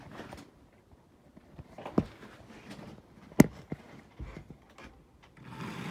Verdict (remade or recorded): recorded